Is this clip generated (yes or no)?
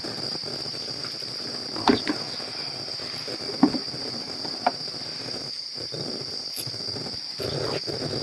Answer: no